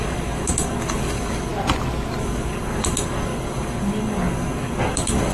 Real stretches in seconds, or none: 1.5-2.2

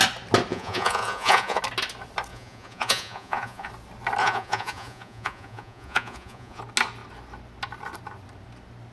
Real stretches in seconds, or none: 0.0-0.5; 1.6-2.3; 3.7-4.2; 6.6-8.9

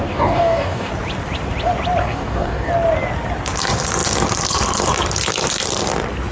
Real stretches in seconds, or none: 0.9-2.0; 2.7-6.3

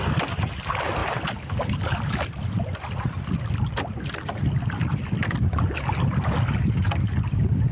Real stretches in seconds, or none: 0.0-7.7